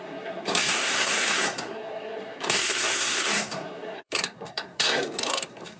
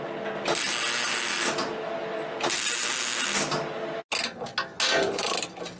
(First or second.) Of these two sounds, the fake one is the first